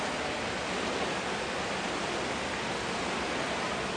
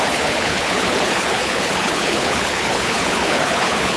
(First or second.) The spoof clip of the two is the second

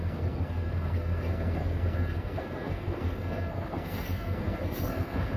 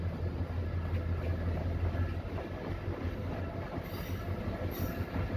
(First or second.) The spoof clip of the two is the first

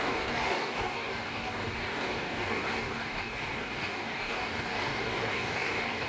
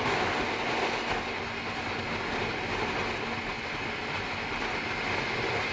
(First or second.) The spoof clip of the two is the first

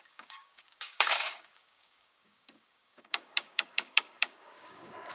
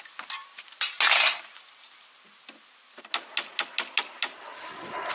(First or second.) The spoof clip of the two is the first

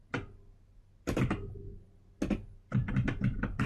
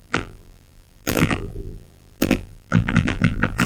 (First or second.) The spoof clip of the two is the second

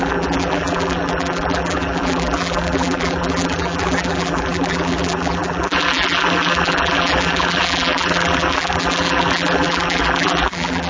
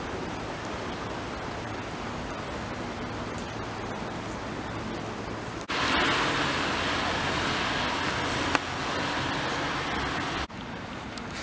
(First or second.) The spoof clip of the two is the first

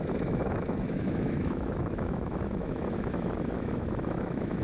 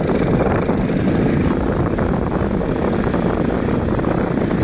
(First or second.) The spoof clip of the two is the first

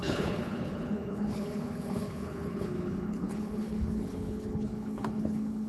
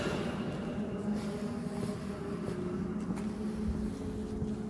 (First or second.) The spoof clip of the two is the first